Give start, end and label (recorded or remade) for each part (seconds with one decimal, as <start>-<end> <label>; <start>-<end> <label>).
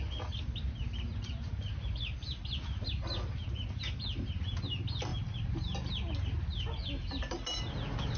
0.0-8.2 recorded